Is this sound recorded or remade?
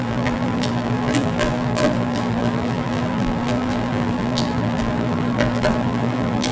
remade